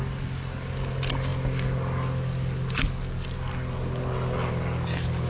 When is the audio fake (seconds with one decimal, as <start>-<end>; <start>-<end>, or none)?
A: none